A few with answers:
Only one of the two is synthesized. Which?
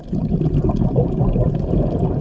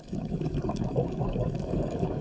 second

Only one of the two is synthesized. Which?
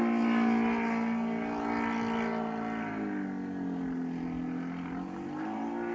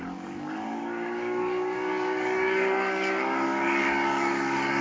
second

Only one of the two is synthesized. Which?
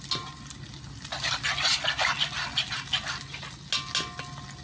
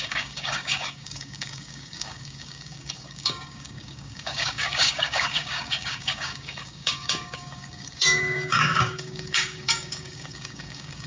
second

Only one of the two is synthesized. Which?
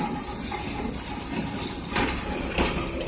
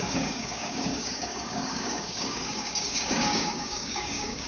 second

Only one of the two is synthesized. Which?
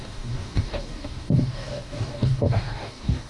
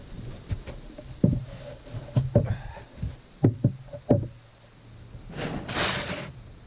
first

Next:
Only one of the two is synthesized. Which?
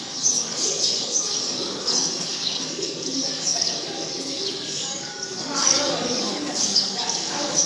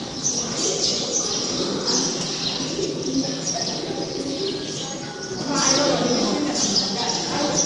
first